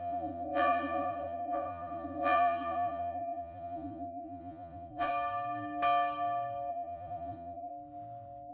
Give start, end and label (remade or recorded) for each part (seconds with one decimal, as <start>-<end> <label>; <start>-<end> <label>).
0.0-5.1 remade; 5.1-6.7 recorded; 6.7-7.7 remade; 7.7-8.5 recorded